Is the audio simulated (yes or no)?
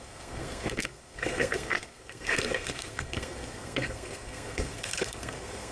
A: yes